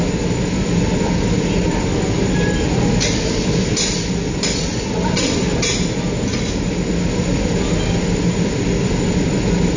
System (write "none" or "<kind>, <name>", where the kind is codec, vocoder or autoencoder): none